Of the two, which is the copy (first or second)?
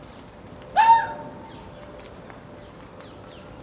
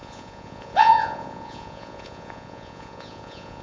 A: second